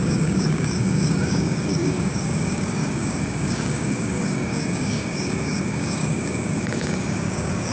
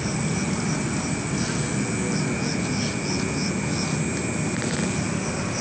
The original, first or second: second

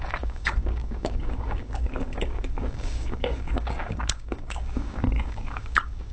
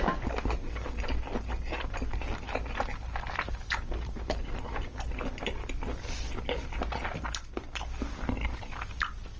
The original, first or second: second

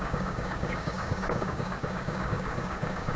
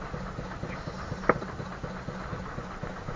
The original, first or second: second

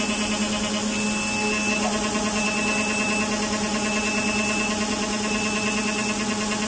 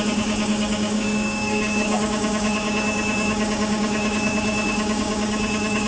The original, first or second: first